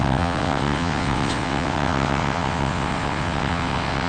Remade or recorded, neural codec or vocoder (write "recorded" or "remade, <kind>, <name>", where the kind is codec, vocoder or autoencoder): remade, vocoder, WaveNeXt